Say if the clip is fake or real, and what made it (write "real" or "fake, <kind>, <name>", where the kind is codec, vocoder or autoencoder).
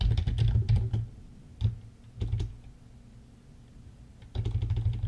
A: real